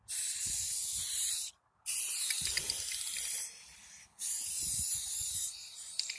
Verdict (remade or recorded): recorded